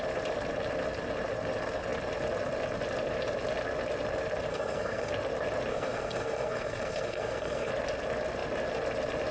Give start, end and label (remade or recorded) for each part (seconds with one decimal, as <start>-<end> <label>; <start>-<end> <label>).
0.0-4.5 recorded; 4.5-5.1 remade; 5.1-5.7 recorded; 5.7-7.7 remade; 7.7-9.3 recorded